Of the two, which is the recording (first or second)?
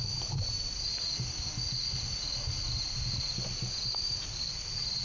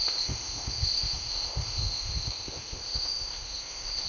first